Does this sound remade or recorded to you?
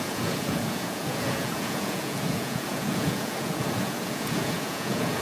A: remade